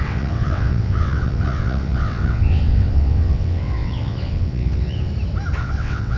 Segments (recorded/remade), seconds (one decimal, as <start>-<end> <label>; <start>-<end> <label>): 0.0-5.1 remade; 5.1-5.6 recorded; 5.6-6.2 remade